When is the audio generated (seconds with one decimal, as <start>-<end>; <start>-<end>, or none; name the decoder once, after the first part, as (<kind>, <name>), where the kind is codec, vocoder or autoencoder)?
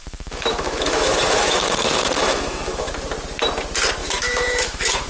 0.0-2.9 (autoencoder, DAC-VAE); 4.0-5.1